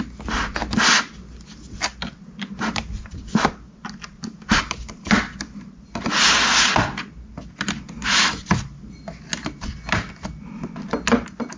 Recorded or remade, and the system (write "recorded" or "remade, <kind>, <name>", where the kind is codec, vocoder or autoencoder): recorded